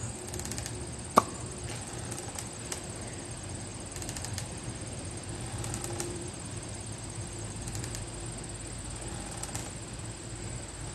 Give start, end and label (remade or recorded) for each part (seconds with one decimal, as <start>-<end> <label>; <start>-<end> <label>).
0.0-3.7 recorded; 3.7-8.0 remade; 8.0-9.6 recorded; 9.6-10.4 remade; 10.4-10.9 recorded